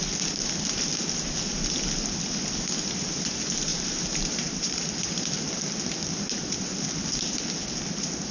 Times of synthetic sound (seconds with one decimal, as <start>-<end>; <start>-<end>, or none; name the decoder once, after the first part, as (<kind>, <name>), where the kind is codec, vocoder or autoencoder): 3.7-5.4 (vocoder, BigVGAN v2)